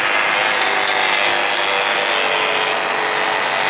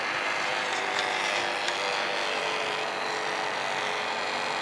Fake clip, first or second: second